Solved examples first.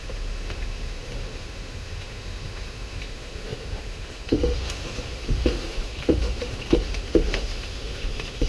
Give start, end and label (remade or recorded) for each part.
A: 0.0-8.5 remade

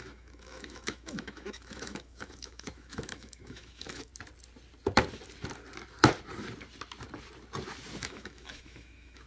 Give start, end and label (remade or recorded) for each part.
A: 0.0-4.1 remade; 4.1-8.0 recorded; 8.0-9.3 remade

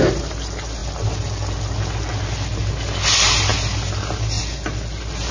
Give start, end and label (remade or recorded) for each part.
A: 0.0-5.3 recorded

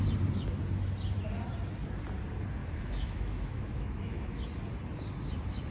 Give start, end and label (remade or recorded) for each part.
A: 0.0-2.6 recorded; 2.6-4.4 remade; 4.4-5.7 recorded

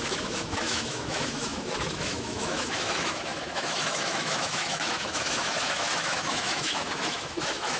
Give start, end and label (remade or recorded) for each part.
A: 0.0-7.8 remade

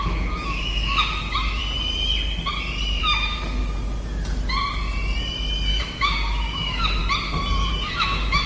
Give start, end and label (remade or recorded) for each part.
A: 0.0-1.6 remade; 1.6-3.0 recorded; 3.0-3.6 remade; 3.6-5.7 recorded; 5.7-7.0 remade; 7.0-7.7 recorded; 7.7-8.5 remade

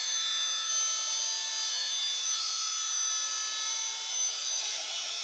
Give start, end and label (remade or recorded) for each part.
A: 0.0-0.7 remade; 0.7-1.7 recorded; 1.7-3.1 remade; 3.1-4.1 recorded; 4.1-5.2 remade